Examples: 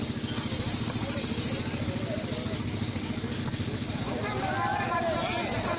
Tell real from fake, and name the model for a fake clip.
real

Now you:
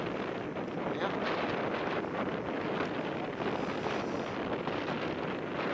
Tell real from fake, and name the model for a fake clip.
real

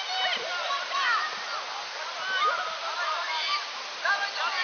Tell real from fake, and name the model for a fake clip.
real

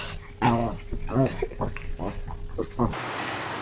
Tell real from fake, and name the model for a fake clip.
real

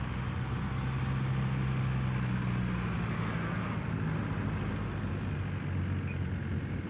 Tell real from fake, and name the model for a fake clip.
real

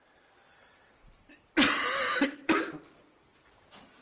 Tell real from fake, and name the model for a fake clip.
real